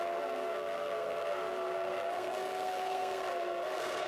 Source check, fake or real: fake